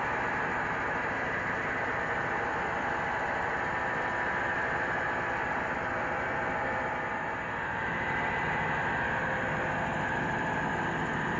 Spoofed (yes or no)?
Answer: yes